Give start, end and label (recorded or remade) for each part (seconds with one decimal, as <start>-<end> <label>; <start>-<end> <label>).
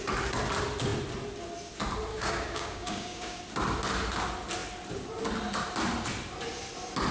0.0-2.1 recorded; 2.1-3.4 remade; 3.4-7.1 recorded